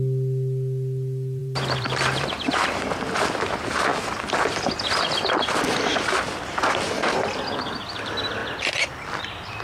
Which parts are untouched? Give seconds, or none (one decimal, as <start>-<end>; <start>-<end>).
0.0-1.4; 3.0-9.6